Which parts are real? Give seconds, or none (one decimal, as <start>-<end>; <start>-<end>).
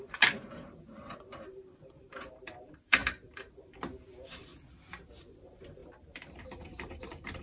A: 3.0-3.6; 4.5-5.2